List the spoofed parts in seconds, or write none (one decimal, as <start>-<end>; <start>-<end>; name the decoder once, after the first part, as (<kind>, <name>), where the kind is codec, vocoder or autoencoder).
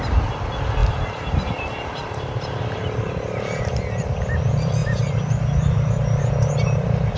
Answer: 0.8-3.6 (vocoder, BigVGAN v2); 4.8-6.3